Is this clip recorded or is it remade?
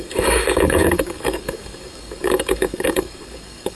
remade